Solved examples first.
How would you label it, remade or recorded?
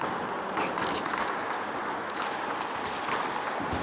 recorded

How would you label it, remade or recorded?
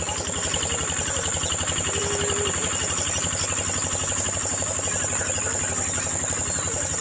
recorded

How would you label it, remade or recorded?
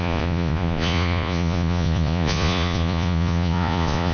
remade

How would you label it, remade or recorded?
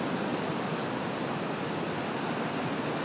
recorded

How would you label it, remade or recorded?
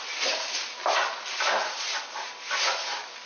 recorded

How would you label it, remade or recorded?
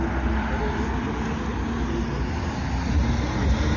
recorded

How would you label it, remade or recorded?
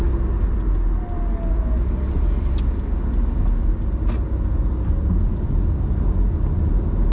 recorded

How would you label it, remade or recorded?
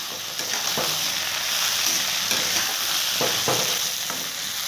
recorded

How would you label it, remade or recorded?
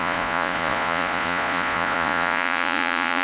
remade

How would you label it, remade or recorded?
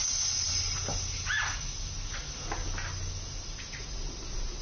recorded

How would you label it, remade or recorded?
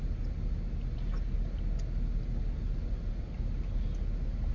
recorded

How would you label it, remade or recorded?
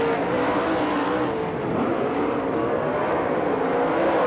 recorded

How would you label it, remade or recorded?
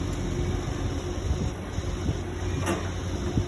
recorded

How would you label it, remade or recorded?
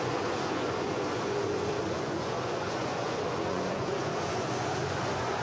remade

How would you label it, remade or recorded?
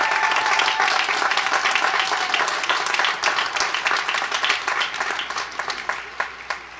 recorded